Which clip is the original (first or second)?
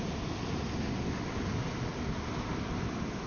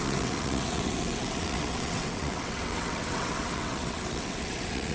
first